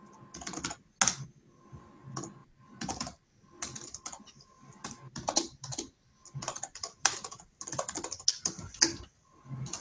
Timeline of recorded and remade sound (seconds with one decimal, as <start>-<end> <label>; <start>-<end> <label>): 0.0-2.4 recorded; 2.4-7.5 remade; 7.5-9.8 recorded

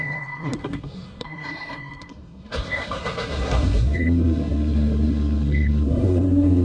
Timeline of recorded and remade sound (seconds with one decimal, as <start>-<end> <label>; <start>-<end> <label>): 0.0-6.6 remade

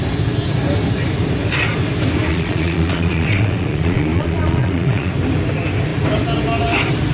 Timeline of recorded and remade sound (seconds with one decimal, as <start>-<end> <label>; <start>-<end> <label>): 0.0-2.3 recorded; 2.3-5.1 remade; 5.1-7.1 recorded

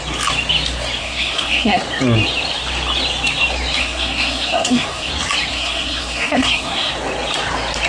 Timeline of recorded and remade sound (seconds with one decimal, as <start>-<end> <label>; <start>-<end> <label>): 0.0-1.0 recorded; 1.0-1.8 remade; 1.8-3.8 recorded; 3.8-5.1 remade; 5.1-5.5 recorded; 5.5-6.9 remade; 6.9-7.9 recorded